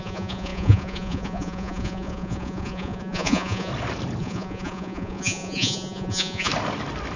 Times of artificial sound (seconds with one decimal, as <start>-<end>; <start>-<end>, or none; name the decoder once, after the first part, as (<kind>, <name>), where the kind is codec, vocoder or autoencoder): 0.0-3.7 (vocoder, Vocos); 4.2-6.5